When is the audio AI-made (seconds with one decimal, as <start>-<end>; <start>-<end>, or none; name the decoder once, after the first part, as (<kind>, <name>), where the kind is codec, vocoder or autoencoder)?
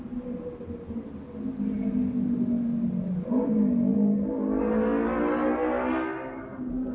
none